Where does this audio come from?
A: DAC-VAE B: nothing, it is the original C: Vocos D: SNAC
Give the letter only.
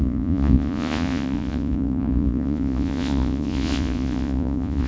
C